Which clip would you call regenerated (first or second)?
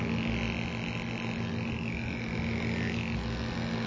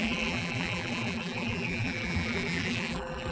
second